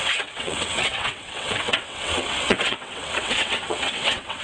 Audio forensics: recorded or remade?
remade